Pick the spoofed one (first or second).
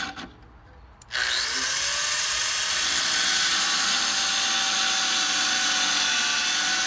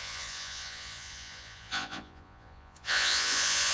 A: second